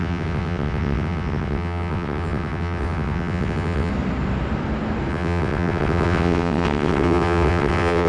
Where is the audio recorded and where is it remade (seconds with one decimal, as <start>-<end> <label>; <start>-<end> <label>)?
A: 0.0-3.9 remade; 3.9-5.1 recorded; 5.1-8.1 remade